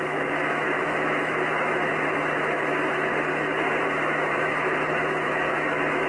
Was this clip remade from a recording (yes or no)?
yes